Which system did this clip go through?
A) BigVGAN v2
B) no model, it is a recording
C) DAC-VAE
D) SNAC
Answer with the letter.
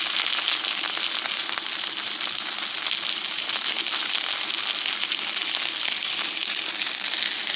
B